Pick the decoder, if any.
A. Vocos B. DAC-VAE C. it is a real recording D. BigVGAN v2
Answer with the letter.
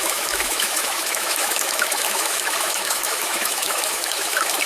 B